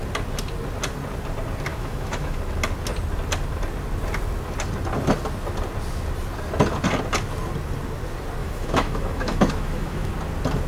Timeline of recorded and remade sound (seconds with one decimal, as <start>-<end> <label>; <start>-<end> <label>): 0.0-1.7 recorded; 1.7-2.4 remade; 2.4-8.4 recorded; 8.4-10.1 remade; 10.1-10.7 recorded